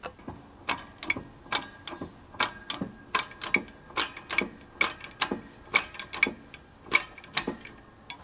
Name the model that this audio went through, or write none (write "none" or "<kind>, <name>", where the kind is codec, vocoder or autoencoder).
none